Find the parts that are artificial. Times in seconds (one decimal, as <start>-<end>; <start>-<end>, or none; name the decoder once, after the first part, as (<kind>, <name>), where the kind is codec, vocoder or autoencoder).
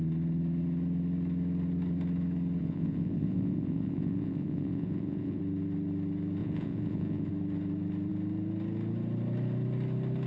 2.6-5.4 (vocoder, Vocos); 6.4-7.3